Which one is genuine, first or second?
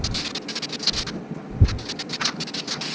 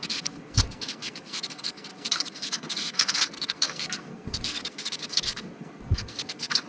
first